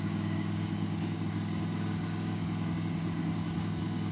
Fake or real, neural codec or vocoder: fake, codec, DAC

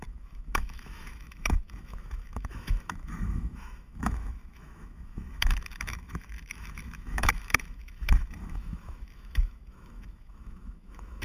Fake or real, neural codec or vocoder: fake, autoencoder, DAC-VAE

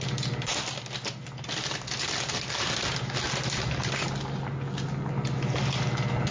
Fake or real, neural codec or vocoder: real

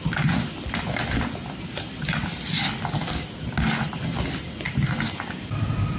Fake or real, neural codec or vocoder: real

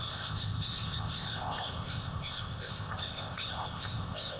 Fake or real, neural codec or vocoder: fake, codec, ZipCodec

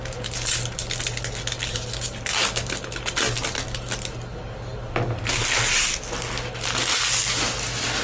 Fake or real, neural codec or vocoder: real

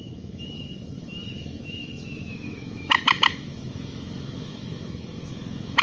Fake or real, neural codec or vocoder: fake, autoencoder, DAC-VAE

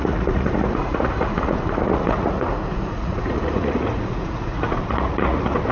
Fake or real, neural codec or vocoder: fake, vocoder, Vocos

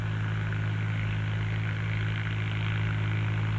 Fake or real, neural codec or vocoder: real